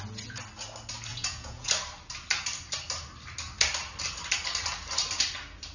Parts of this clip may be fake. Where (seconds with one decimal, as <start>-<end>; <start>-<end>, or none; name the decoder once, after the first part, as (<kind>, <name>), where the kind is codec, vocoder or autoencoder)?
1.1-1.7 (vocoder, Vocos)